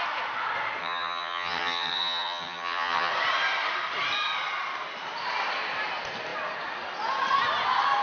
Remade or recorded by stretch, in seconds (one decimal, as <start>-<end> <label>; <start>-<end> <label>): 0.0-0.8 recorded; 0.8-3.1 remade; 3.1-8.0 recorded